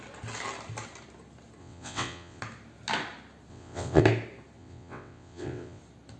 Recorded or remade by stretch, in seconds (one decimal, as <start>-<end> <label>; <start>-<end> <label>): 0.0-1.6 recorded; 1.6-2.4 remade; 2.4-3.5 recorded; 3.5-4.0 remade; 4.0-4.6 recorded; 4.6-5.8 remade; 5.8-6.2 recorded